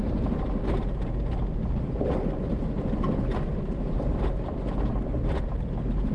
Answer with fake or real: real